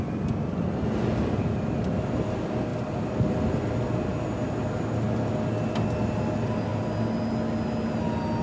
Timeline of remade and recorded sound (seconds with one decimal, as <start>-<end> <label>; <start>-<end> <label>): 0.0-8.4 recorded